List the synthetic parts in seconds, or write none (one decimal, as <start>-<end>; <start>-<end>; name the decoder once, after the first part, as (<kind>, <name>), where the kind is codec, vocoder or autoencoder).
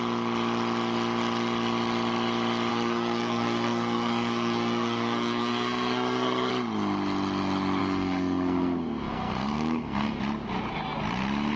2.7-6.5 (codec, SNAC); 7.8-10.2